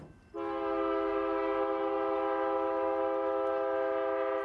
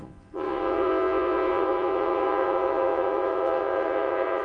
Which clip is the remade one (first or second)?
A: second